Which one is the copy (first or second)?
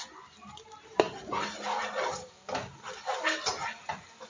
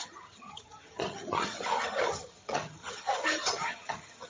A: second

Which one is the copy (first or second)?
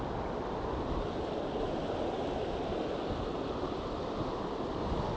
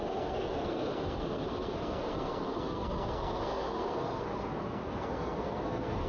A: second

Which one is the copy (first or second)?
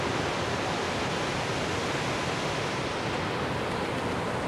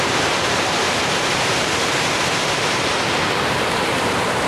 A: second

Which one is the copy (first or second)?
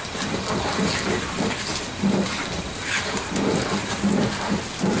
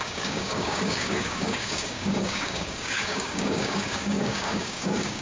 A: second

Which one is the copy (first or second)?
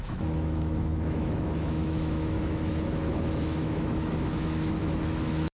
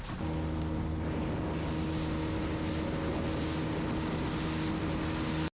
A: first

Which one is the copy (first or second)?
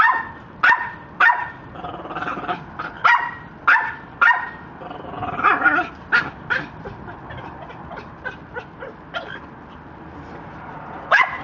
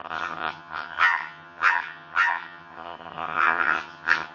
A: second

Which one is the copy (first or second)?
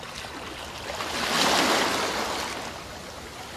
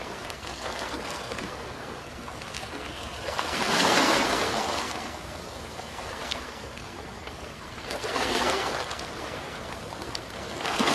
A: second